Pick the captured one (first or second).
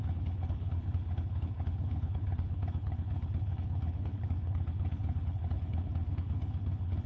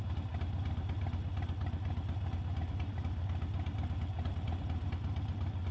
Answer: second